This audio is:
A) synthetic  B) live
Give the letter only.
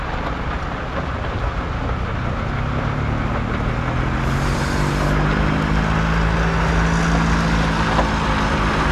B